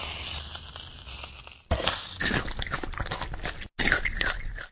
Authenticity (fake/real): real